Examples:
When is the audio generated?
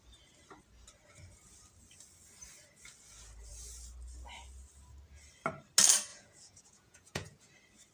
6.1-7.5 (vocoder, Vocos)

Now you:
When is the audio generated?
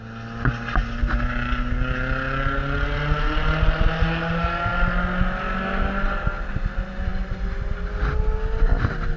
none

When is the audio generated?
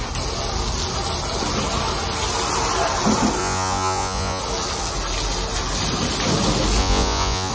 3.4-4.4 (vocoder, Vocos); 6.8-7.5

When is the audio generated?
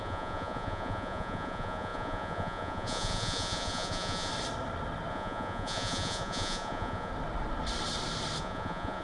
0.0-4.3 (vocoder, Vocos); 5.1-7.1; 8.4-9.0